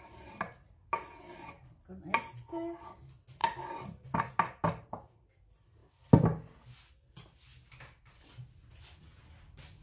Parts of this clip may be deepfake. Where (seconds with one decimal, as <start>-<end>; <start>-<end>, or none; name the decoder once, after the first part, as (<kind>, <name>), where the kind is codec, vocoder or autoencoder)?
none